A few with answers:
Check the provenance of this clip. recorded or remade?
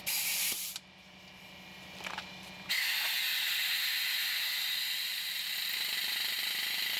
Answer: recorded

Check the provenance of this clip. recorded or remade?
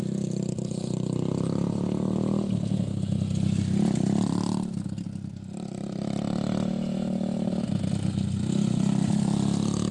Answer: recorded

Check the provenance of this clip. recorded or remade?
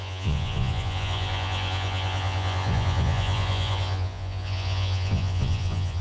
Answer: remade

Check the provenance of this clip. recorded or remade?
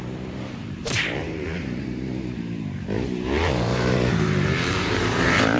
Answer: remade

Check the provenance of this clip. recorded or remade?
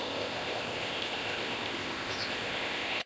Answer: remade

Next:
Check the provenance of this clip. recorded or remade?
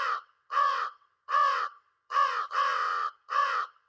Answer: remade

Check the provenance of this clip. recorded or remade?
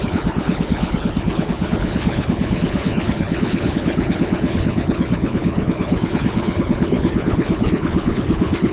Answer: remade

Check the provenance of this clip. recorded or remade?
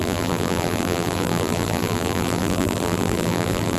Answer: remade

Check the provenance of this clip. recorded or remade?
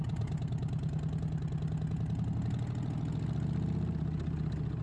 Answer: recorded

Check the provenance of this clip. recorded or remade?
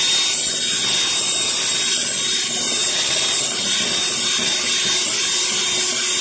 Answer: recorded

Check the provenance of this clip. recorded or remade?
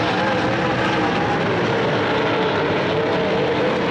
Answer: recorded